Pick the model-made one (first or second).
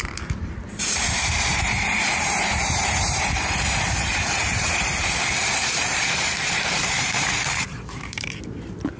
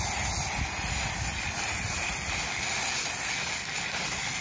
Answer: first